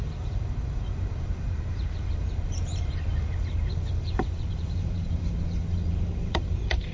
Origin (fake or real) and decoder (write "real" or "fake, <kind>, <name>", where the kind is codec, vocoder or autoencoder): fake, vocoder, BigVGAN v2